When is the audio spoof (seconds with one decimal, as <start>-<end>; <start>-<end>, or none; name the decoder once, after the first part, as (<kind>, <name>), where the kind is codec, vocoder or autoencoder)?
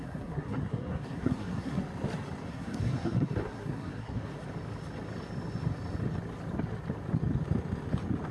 0.0-1.8 (codec, SNAC); 2.5-4.3